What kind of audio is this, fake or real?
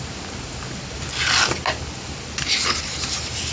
real